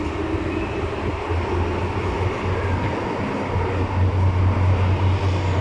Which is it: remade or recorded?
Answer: recorded